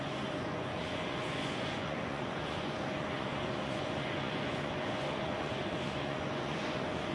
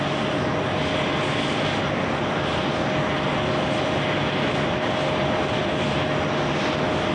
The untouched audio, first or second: second